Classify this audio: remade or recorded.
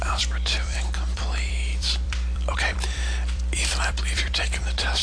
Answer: remade